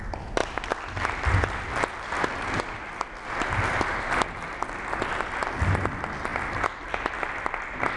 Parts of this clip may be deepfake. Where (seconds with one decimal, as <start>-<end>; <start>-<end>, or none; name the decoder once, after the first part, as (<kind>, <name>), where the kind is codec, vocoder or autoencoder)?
none